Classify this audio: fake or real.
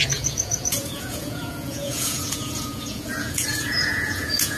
fake